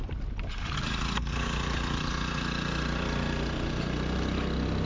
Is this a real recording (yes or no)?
yes